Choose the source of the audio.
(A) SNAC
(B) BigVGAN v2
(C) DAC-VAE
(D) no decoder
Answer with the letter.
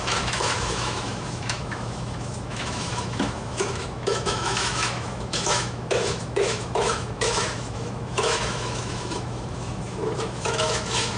C